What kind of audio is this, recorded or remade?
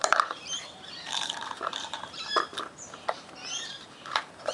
remade